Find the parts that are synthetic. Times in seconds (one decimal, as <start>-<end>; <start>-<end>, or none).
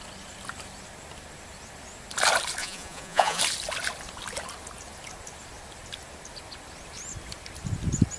2.6-3.4